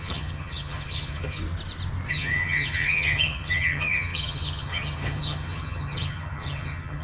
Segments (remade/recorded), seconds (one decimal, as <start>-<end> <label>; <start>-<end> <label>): 0.0-1.4 remade; 1.4-2.1 recorded; 2.1-7.0 remade